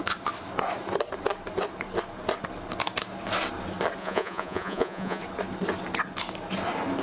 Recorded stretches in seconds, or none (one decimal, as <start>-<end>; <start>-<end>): 0.0-4.0; 5.2-7.0